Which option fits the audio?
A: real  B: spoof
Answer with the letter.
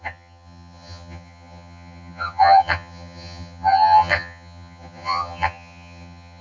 B